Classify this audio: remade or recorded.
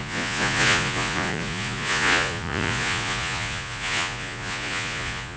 remade